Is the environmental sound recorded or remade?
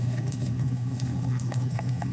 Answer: remade